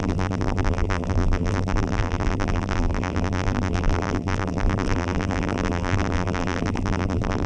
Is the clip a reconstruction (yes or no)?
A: yes